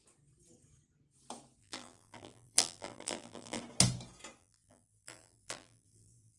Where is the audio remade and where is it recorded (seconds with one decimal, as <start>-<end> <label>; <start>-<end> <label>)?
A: 0.0-1.6 recorded; 1.6-3.6 remade; 3.6-4.4 recorded; 4.4-6.4 remade